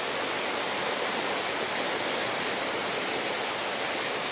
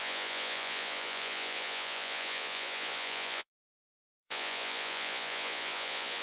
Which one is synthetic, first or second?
second